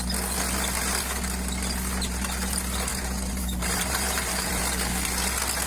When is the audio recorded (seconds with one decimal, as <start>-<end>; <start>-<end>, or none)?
0.0-2.9; 4.5-5.7